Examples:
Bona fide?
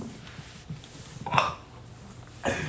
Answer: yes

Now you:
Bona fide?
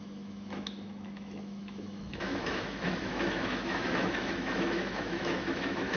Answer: no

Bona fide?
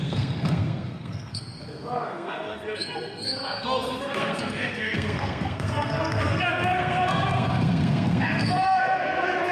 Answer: no